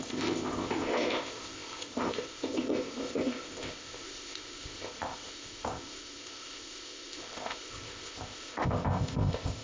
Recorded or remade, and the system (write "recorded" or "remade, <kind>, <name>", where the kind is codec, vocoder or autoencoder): remade, codec, ZipCodec